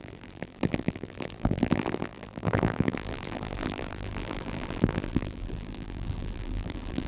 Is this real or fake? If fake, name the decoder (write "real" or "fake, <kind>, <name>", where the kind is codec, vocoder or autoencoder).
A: fake, vocoder, BigVGAN v2